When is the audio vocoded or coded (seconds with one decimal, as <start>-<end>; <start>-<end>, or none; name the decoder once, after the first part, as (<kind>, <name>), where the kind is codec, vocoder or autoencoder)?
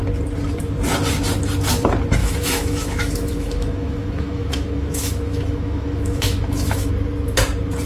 2.2-6.9 (autoencoder, DAC-VAE)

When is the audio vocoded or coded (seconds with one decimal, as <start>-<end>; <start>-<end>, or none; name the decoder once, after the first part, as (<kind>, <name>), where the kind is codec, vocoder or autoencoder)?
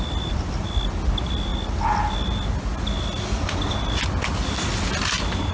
none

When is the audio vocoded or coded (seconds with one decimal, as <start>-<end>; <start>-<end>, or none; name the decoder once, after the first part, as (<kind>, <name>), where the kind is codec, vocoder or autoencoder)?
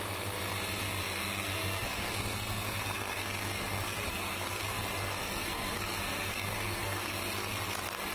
1.0-4.8 (codec, SNAC); 5.2-7.1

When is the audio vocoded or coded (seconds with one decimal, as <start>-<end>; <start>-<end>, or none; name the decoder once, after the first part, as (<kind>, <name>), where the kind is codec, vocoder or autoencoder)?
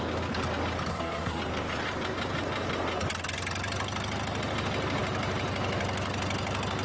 0.9-1.4 (codec, SNAC)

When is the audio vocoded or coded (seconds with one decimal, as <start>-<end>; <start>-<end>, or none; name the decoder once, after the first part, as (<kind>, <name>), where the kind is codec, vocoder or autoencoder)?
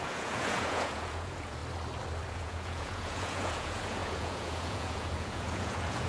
0.0-1.6 (vocoder, Vocos); 2.3-6.1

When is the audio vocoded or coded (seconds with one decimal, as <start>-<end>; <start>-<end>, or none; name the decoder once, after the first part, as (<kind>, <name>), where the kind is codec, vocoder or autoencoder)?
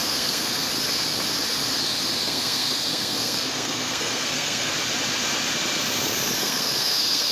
0.0-0.7 (codec, SNAC); 2.2-4.7; 6.4-7.3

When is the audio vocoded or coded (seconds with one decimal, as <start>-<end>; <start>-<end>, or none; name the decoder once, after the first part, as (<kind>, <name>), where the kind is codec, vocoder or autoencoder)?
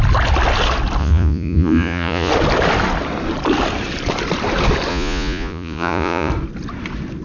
1.0-2.3 (vocoder, Vocos); 4.9-6.3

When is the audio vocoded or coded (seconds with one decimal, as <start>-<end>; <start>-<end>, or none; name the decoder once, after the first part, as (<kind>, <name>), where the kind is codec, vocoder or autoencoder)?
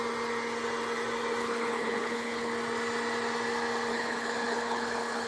1.4-2.5 (codec, HILCodec); 3.9-5.3